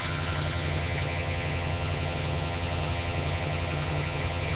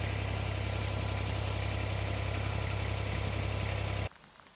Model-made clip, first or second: first